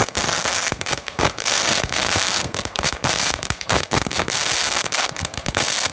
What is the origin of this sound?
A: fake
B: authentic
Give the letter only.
A